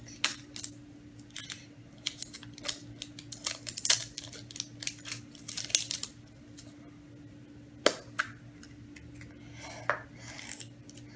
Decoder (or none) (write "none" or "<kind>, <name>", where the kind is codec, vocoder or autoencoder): none